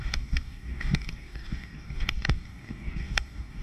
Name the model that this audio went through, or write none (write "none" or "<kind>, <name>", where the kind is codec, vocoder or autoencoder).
codec, DAC